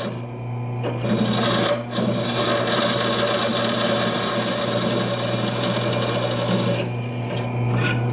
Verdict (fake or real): real